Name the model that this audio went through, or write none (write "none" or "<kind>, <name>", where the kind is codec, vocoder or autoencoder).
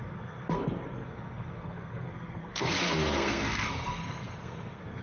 codec, SNAC